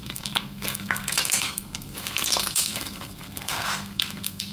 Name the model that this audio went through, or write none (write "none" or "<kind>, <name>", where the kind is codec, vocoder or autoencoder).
codec, SNAC